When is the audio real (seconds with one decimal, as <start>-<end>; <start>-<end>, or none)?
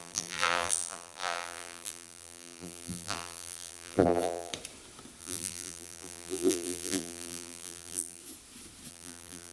4.5-5.2; 8.2-8.9